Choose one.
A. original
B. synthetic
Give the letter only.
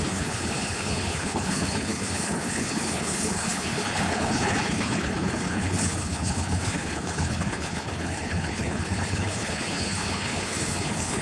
B